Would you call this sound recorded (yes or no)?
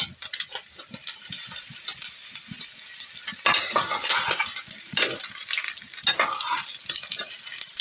yes